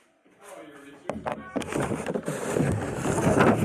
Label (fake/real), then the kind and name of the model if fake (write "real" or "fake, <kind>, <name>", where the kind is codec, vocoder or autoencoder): real